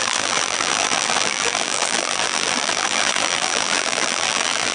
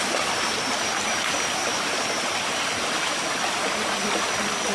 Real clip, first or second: second